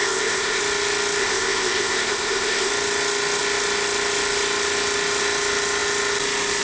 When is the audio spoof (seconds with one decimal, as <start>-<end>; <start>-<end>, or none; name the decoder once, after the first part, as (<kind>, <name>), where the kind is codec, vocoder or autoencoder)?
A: 0.0-0.6 (codec, ZipCodec); 1.2-2.7